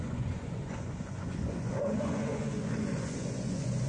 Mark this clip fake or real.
fake